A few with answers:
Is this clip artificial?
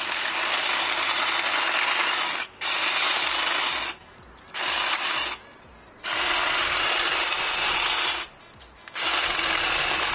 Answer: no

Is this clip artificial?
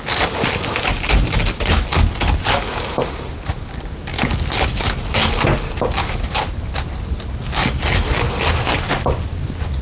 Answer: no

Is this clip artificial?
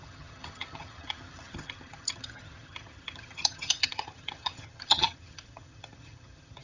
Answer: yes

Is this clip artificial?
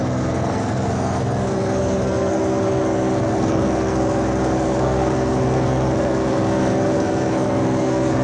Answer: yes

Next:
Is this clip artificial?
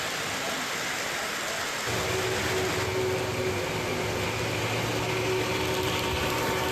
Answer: no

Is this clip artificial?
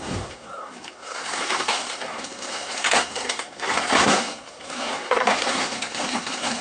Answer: yes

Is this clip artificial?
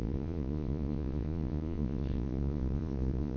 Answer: yes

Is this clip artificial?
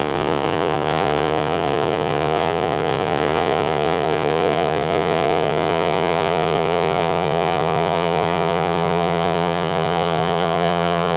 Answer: yes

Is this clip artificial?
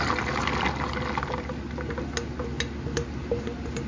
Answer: no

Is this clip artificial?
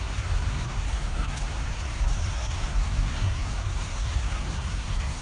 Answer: yes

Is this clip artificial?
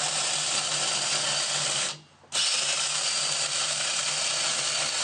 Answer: no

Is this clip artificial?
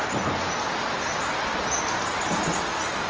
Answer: no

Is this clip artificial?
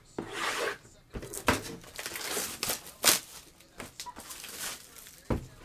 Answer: no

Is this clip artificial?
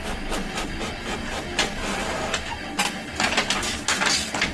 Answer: no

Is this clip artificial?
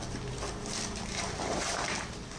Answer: no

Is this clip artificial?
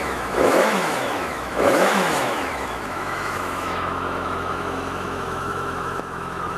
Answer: yes